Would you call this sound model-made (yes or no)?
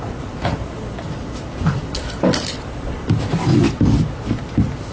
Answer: no